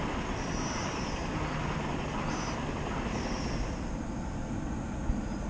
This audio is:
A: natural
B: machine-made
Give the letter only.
A